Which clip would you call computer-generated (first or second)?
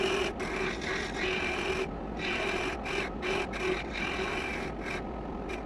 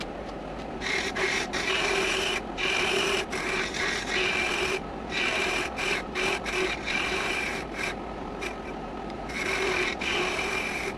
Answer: second